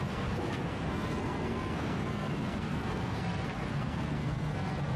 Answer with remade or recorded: remade